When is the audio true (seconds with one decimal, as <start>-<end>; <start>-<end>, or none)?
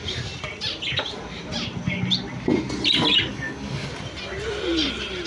0.0-3.3; 3.9-5.3